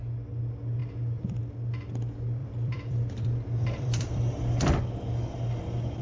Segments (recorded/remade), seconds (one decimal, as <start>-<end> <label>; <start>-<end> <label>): 0.0-0.8 recorded; 0.8-1.4 remade; 1.4-2.4 recorded; 2.4-4.3 remade; 4.3-6.0 recorded